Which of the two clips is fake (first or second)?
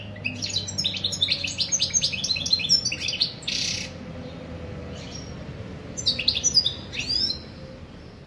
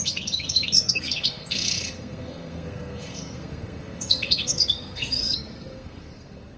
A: second